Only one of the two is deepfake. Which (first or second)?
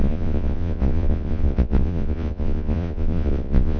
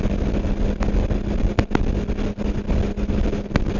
first